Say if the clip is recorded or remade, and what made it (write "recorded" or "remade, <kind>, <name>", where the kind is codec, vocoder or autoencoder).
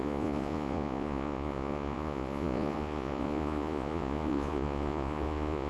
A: remade, vocoder, Vocos